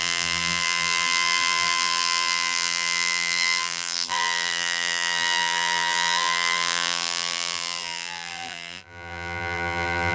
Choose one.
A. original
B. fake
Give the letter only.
B